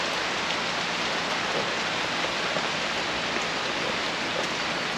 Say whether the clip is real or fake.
real